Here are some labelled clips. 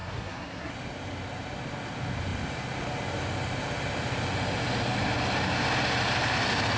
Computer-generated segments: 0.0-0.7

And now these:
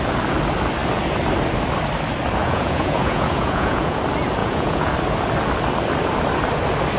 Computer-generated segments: 2.4-4.0; 4.4-4.9

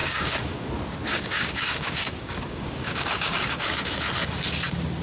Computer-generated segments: 0.0-0.7; 1.1-4.1

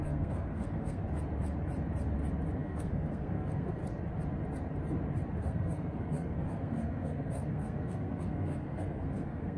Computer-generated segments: 0.0-1.0; 2.6-3.8; 5.4-9.6

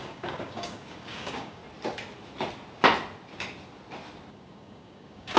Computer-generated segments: 0.0-1.6; 4.3-5.4

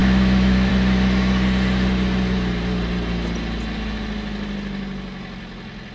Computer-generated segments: 0.0-0.7